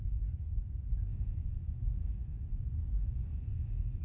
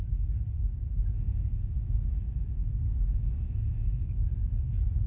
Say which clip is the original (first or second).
second